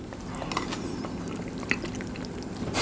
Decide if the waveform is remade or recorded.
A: recorded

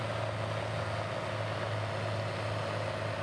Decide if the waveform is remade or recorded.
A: recorded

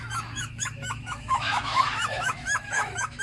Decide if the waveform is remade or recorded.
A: remade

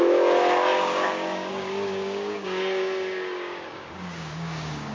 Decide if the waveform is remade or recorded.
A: remade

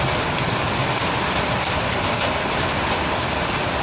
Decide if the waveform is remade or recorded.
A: recorded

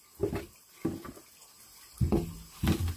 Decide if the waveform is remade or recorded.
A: recorded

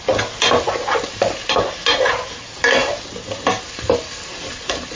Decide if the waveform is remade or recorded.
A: recorded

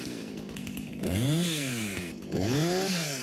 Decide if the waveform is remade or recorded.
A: remade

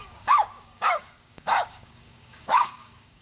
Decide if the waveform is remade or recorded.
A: remade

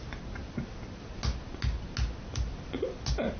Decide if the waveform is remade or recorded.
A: recorded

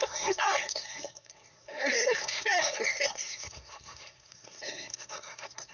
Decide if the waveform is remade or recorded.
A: remade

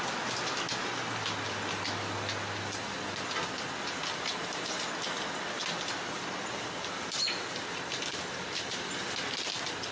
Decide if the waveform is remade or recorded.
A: recorded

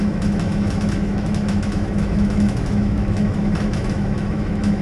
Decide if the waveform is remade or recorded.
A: remade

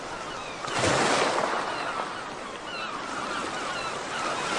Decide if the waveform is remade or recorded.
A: recorded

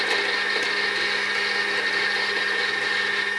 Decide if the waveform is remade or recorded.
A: recorded